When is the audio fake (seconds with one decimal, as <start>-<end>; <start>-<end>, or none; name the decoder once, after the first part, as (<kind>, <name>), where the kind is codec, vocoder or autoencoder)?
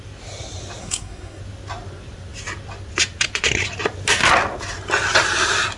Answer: 0.8-1.4 (codec, SNAC)